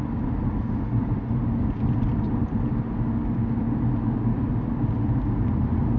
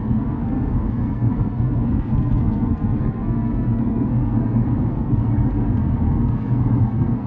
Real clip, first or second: first